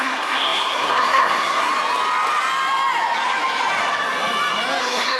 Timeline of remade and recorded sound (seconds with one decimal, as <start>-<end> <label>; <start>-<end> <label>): 0.0-1.7 remade; 1.7-4.8 recorded; 4.8-5.2 remade